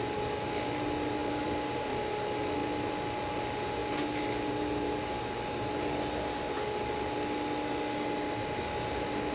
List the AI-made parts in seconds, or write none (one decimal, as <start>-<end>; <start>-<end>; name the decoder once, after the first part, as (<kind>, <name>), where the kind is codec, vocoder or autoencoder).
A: 1.2-2.1 (vocoder, BigVGAN v2)